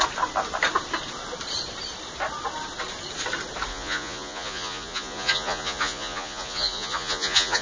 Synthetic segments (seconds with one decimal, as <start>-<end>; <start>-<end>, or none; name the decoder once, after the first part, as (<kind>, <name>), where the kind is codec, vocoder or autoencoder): 3.7-7.6 (vocoder, Vocos)